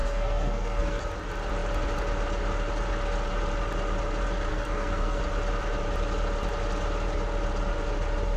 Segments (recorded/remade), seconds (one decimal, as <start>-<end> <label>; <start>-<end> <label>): 0.0-1.0 remade; 1.0-4.5 recorded; 4.5-5.2 remade; 5.2-8.4 recorded